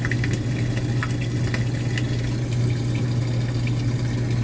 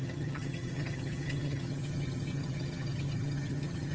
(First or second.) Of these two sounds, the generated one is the second